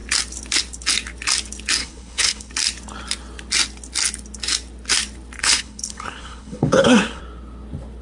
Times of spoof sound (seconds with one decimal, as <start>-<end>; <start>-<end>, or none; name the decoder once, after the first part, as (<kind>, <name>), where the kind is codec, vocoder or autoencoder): 1.8-2.5 (codec, HILCodec); 5.4-7.2